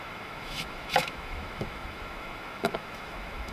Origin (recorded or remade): remade